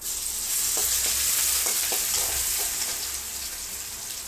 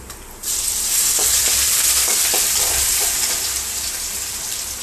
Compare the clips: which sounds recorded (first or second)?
first